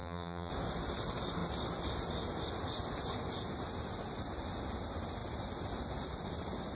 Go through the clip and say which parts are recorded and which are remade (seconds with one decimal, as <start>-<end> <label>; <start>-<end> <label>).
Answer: 0.0-0.5 remade; 0.5-6.7 recorded